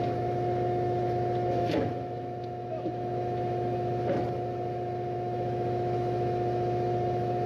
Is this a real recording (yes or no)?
no